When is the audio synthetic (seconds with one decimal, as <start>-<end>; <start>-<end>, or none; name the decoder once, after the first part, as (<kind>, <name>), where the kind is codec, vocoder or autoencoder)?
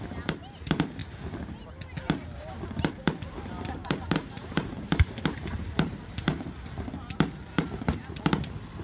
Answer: 3.8-6.5 (vocoder, BigVGAN v2)